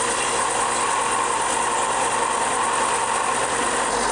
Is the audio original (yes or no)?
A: yes